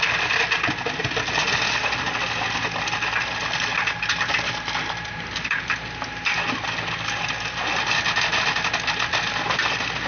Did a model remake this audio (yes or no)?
no